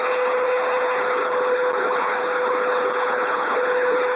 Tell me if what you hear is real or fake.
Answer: fake